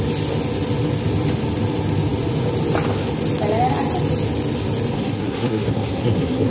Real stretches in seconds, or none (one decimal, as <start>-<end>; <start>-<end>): 0.0-4.9

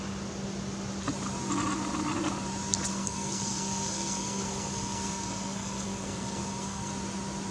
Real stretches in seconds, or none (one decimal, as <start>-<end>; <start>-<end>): 0.0-2.9; 6.9-7.5

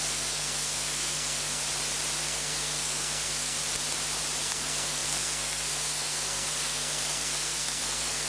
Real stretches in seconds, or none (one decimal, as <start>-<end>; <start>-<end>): 1.6-2.2; 3.6-4.4